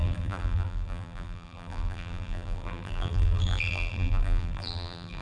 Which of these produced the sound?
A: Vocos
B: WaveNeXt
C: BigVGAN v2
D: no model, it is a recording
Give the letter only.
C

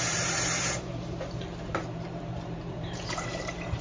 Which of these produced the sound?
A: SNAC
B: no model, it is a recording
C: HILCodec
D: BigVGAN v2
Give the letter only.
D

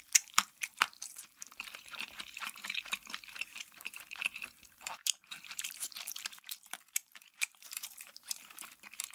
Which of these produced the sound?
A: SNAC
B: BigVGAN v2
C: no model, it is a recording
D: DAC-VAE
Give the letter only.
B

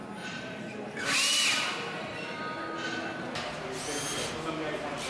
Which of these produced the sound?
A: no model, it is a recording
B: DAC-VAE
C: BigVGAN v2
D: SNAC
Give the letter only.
A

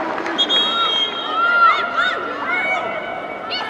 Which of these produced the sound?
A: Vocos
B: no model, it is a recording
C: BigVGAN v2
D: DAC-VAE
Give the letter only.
B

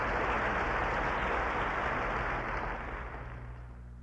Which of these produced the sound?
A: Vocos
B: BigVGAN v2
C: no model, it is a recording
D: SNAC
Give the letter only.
C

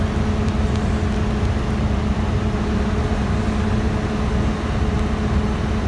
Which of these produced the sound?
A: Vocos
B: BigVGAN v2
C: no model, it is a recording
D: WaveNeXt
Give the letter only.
C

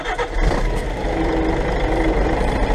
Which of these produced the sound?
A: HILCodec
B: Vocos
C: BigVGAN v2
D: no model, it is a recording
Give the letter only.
C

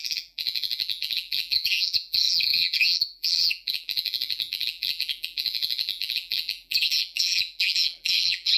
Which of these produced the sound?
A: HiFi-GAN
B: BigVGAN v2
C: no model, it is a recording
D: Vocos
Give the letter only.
B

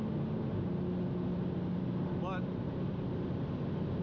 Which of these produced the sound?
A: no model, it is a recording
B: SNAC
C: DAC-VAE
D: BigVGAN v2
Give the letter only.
A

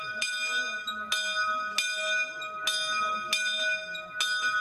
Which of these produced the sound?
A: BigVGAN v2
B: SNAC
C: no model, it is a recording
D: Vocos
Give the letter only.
C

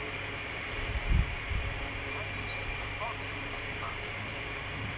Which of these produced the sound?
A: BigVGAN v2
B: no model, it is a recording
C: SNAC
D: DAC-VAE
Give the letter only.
A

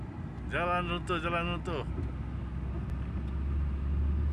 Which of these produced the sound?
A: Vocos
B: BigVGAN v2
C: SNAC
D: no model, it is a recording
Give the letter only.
D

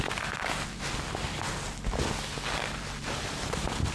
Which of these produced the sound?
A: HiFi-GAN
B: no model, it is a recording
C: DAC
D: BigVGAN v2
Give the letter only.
B